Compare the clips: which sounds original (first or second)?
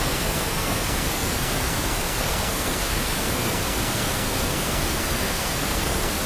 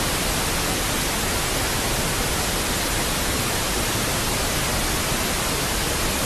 second